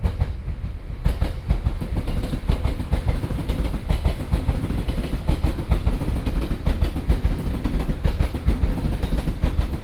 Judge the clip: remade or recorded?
recorded